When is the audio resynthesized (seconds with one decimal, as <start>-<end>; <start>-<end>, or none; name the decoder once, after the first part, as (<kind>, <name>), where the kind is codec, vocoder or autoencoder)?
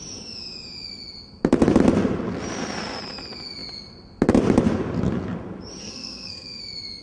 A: 5.8-6.6 (codec, SNAC)